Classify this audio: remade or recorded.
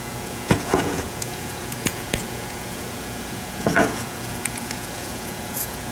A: remade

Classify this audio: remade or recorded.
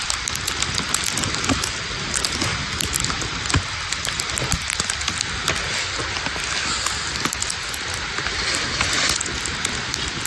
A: recorded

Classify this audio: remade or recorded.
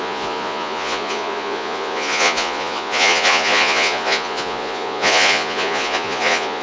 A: remade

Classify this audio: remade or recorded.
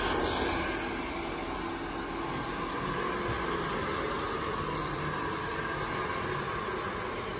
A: recorded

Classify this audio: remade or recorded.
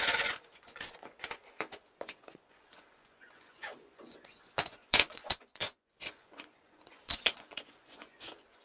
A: remade